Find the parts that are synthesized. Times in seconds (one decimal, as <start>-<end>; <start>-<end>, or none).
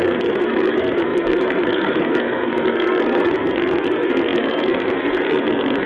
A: 0.0-5.9